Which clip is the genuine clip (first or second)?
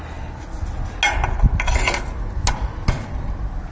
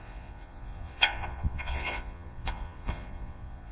first